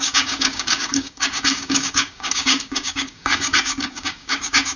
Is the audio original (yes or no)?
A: no